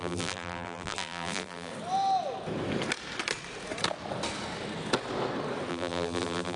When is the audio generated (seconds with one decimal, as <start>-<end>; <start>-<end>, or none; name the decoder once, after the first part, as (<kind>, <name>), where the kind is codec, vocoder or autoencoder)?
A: 0.0-1.7 (vocoder, BigVGAN v2); 5.7-6.6

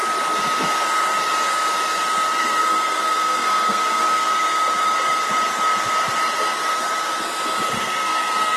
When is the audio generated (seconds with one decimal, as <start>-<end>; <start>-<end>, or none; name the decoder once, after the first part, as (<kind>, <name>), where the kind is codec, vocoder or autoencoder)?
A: 2.4-4.3 (codec, SNAC); 7.7-8.6

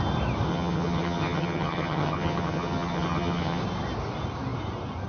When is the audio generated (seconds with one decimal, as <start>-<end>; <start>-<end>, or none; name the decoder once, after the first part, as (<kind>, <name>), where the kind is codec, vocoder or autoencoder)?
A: 0.5-3.6 (vocoder, HiFi-GAN)

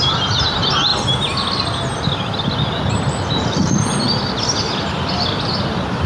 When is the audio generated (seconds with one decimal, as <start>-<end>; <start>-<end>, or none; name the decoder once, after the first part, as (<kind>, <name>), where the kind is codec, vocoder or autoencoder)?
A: none

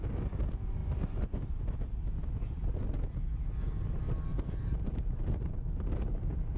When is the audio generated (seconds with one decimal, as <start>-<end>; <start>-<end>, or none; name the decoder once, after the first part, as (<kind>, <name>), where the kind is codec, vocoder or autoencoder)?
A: 4.3-5.4 (vocoder, BigVGAN v2)

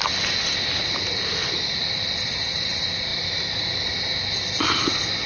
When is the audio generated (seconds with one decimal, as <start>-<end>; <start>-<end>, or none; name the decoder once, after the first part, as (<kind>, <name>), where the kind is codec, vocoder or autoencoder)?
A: none